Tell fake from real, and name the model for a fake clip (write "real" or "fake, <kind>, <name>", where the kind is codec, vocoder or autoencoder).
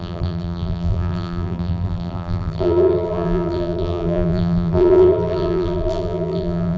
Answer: fake, vocoder, BigVGAN v2